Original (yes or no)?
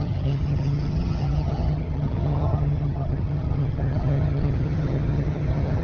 no